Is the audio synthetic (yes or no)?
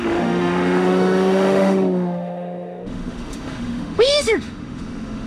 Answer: yes